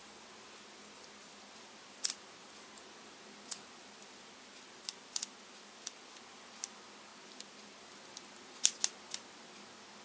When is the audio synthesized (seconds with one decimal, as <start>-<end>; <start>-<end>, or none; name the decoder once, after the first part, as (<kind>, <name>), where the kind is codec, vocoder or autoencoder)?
none